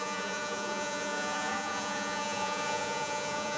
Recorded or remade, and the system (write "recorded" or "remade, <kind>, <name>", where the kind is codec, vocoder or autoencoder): remade, vocoder, Vocos